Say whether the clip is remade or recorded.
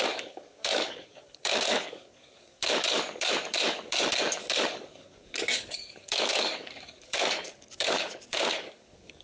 remade